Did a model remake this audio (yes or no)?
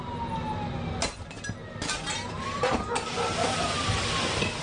no